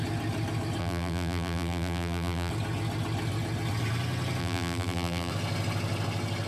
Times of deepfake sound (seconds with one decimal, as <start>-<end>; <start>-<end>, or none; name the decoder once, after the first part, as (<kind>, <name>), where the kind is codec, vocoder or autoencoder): 0.8-2.5 (vocoder, BigVGAN v2); 4.4-5.3